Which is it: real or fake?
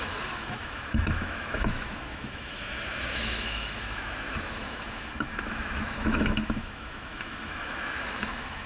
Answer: fake